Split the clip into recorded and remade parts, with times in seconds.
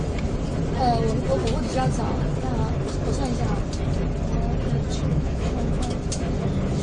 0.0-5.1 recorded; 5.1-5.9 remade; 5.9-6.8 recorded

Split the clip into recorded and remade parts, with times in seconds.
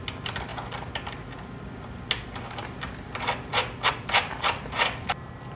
0.0-5.6 recorded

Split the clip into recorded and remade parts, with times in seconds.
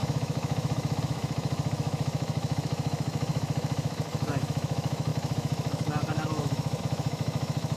0.0-7.8 remade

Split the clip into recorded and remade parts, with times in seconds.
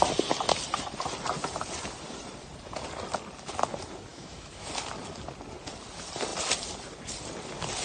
0.0-4.1 recorded; 4.1-4.7 remade; 4.7-7.8 recorded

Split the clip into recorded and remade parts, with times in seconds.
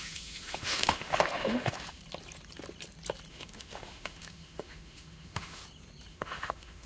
0.0-2.0 remade; 2.0-3.3 recorded; 3.3-5.6 remade; 5.6-6.1 recorded; 6.1-6.9 remade